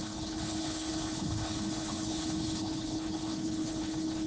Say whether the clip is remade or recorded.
remade